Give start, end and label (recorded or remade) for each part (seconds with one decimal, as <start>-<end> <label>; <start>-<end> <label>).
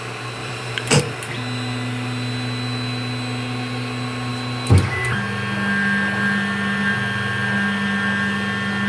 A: 0.0-0.4 recorded; 0.4-1.0 remade; 1.0-8.9 recorded